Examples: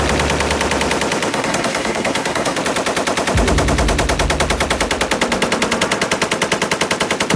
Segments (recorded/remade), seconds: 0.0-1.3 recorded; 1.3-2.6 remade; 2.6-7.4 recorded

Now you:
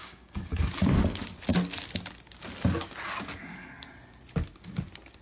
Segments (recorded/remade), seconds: 0.0-0.7 remade; 0.7-5.2 recorded

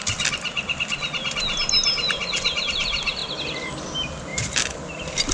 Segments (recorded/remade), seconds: 0.0-5.3 recorded

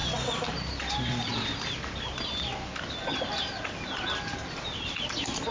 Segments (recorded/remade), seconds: 0.0-5.5 recorded

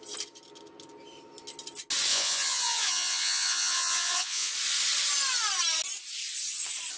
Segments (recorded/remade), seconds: 0.0-2.1 recorded; 2.1-4.5 remade; 4.5-7.0 recorded

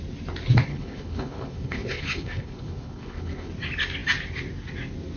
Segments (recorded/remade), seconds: 0.0-0.7 recorded; 0.7-3.5 remade; 3.5-5.2 recorded

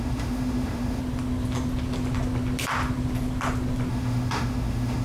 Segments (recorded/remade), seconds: 0.0-1.0 remade; 1.0-3.9 recorded; 3.9-5.0 remade